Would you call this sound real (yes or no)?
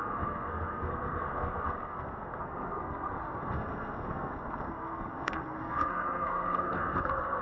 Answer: no